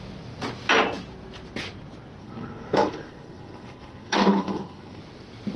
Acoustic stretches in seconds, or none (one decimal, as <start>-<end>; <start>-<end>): 0.0-2.2; 5.0-5.6